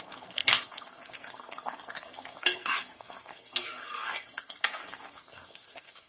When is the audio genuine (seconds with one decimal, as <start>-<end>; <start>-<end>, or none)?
none